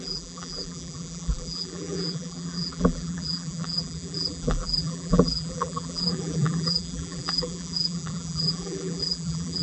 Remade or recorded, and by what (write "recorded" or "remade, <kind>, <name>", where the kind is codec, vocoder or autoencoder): remade, vocoder, BigVGAN v2